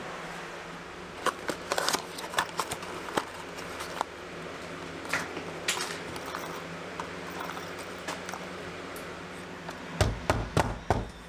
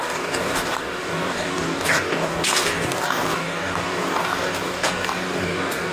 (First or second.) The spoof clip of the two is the second